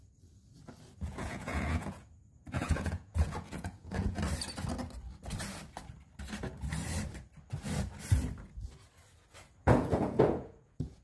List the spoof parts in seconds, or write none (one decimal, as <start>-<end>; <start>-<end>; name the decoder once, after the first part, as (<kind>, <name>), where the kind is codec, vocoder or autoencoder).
1.0-4.2 (vocoder, Vocos); 9.6-11.0

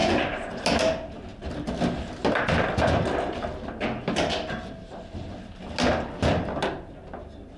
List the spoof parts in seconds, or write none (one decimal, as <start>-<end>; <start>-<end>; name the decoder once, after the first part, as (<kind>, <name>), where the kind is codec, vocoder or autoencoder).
0.0-0.6 (vocoder, Vocos)

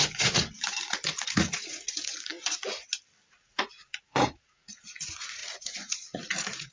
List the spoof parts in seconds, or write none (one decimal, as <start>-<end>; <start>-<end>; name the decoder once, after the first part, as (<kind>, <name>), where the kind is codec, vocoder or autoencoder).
0.0-2.3 (vocoder, Vocos); 3.3-6.7

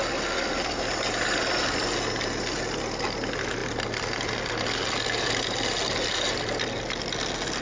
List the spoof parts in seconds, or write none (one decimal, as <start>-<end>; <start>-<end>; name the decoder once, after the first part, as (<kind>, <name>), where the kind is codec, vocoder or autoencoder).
none